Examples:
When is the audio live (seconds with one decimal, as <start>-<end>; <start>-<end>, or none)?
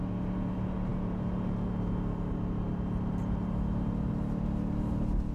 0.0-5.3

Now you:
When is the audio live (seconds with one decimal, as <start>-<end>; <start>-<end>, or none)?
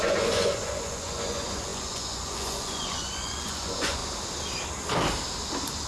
4.0-5.9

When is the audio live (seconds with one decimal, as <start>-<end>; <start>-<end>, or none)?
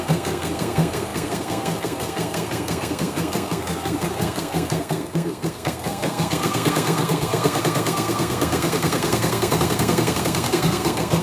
none